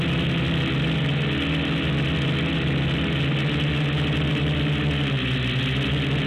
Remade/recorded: recorded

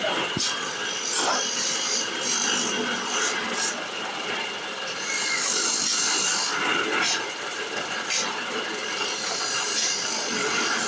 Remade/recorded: remade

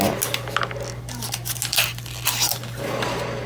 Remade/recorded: recorded